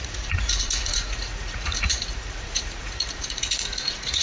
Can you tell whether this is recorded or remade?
remade